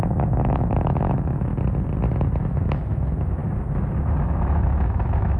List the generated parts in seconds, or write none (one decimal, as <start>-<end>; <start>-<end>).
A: 0.0-1.5; 2.6-3.4; 4.2-5.4

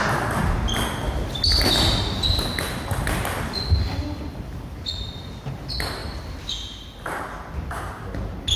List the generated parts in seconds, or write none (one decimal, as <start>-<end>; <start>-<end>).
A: none

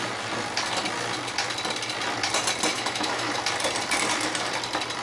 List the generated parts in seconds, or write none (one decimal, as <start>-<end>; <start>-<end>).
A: 2.7-3.3

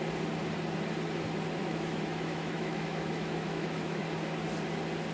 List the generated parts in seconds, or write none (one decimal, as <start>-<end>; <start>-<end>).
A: 1.6-4.0

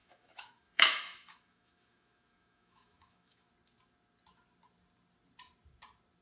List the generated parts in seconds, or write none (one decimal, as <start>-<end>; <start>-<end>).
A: 0.0-3.5

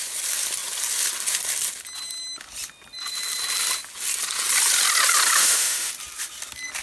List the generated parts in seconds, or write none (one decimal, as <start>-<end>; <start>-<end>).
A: 5.4-5.9

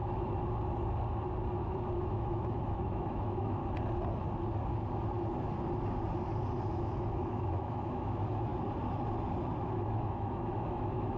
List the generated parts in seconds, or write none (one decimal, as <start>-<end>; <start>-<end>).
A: 2.0-3.6; 6.7-8.5; 9.6-11.2